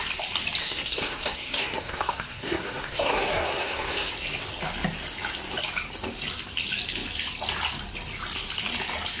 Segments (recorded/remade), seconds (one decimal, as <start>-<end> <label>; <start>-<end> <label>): 0.0-0.6 recorded; 0.6-4.1 remade; 4.1-9.2 recorded